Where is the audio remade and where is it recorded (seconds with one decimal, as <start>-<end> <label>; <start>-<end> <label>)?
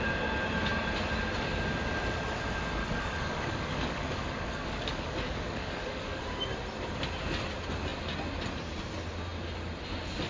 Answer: 0.0-2.8 recorded; 2.8-6.2 remade; 6.2-10.3 recorded